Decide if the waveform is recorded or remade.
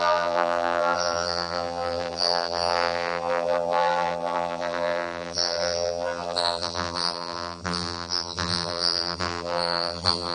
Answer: remade